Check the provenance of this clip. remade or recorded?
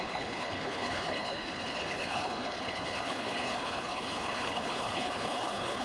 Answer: remade